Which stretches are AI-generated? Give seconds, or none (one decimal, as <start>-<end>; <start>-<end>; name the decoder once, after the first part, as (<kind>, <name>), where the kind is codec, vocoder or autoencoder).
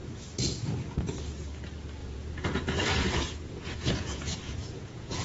2.0-5.2 (vocoder, Vocos)